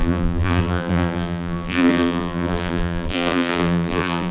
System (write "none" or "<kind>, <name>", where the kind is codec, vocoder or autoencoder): vocoder, BigVGAN v2